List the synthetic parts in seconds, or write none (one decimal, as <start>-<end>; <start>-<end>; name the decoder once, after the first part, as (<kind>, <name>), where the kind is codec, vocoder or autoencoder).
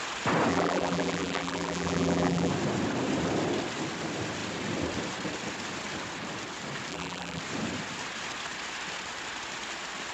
0.5-2.5 (vocoder, BigVGAN v2); 6.9-7.4